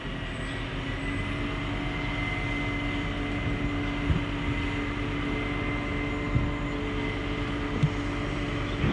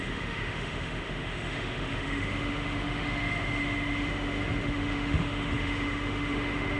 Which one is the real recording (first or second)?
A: first